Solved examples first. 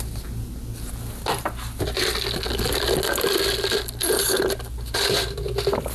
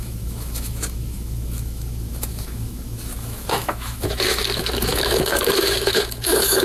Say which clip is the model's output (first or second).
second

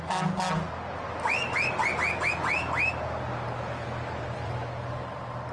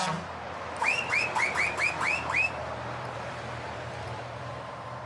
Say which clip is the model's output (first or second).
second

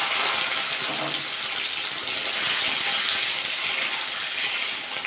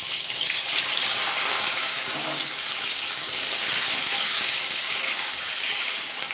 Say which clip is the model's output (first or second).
second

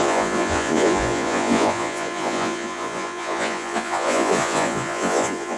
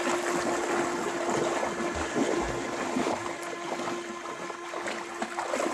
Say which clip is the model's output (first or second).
first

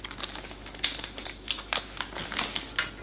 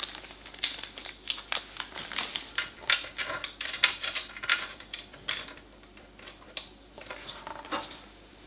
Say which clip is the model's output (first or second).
second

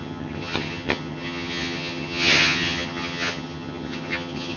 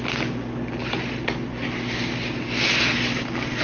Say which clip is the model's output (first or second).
first